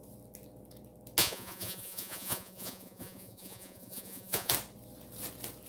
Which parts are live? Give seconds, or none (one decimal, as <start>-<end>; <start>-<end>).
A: 0.0-1.2; 4.5-5.7